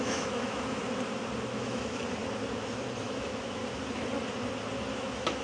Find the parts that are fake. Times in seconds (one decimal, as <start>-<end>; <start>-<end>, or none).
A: 0.0-0.8; 1.5-2.0; 3.0-3.6; 4.9-5.4